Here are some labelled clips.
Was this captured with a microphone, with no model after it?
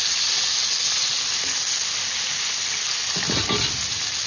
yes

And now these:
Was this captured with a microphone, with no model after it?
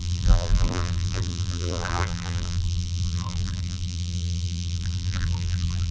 no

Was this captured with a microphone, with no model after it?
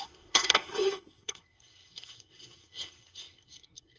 no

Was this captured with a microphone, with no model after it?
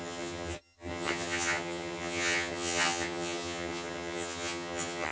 no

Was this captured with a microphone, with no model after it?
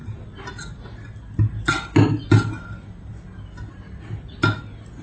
yes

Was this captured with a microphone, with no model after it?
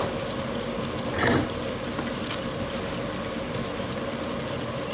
yes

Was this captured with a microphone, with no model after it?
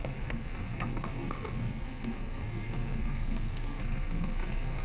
no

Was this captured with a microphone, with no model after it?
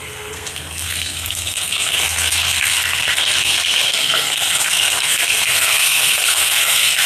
no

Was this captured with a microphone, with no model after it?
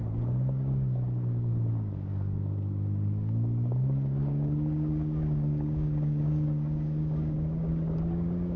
no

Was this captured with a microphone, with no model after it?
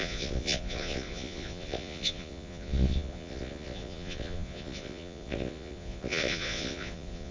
no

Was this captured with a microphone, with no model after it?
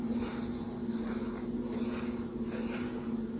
yes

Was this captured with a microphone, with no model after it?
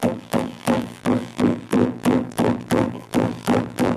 no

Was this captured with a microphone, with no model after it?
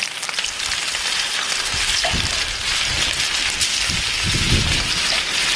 yes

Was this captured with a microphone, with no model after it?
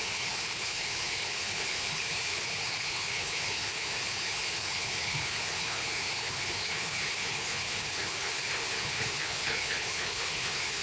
no